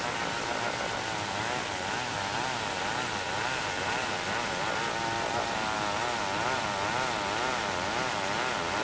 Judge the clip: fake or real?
real